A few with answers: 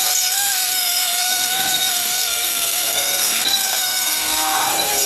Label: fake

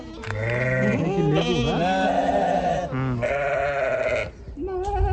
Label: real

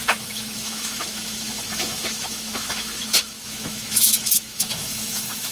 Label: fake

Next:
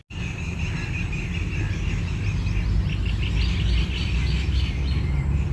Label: real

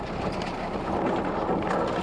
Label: real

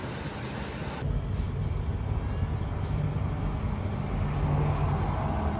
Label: real